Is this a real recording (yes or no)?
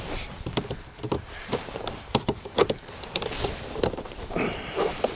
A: no